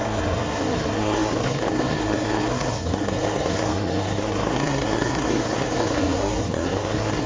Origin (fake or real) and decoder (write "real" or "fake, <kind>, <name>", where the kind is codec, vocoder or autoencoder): fake, codec, SNAC